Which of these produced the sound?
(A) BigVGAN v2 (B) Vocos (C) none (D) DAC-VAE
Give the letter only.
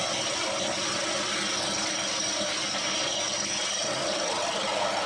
C